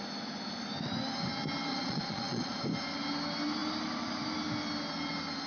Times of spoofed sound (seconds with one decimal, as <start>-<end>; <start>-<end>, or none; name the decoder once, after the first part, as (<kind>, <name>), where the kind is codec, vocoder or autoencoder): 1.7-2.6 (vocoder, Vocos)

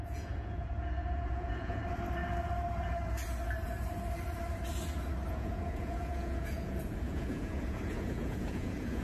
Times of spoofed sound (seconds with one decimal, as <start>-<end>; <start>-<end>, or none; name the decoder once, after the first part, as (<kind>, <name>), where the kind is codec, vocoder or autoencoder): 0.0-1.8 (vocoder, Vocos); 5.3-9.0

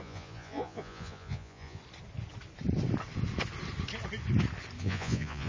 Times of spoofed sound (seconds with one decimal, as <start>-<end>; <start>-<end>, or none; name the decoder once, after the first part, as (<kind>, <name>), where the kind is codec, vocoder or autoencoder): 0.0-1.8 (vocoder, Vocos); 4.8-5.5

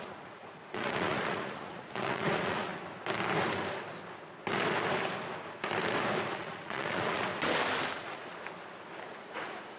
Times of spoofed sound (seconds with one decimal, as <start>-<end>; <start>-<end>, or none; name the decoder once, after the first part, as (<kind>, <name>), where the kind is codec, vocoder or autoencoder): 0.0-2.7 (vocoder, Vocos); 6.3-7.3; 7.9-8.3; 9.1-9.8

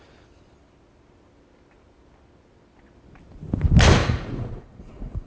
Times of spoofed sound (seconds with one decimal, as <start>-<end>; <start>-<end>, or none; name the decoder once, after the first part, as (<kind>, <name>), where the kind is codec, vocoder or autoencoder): 4.0-5.3 (vocoder, Vocos)

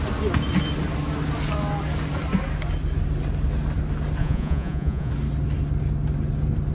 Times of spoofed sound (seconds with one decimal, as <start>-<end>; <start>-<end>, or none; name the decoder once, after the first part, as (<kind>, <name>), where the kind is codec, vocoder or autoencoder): 4.2-5.1 (vocoder, Vocos)